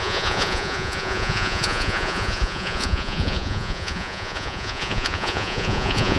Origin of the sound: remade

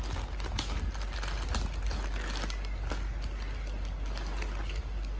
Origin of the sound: recorded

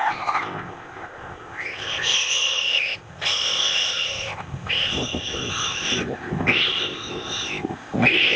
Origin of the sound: remade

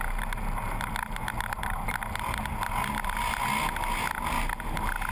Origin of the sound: recorded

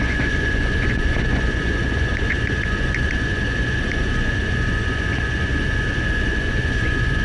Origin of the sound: remade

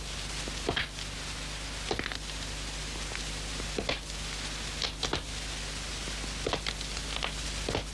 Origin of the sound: recorded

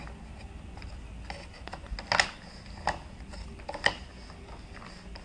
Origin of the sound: recorded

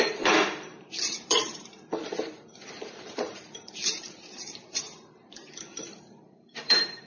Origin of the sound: remade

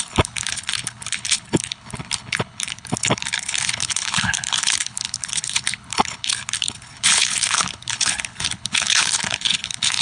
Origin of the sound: remade